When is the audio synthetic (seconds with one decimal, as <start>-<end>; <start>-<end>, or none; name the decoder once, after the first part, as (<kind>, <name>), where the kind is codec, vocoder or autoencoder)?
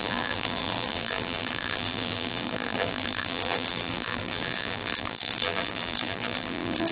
0.0-6.9 (vocoder, BigVGAN v2)